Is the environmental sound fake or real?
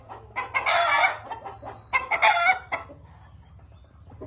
real